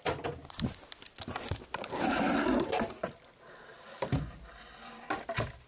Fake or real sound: real